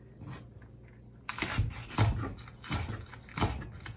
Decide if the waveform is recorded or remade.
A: recorded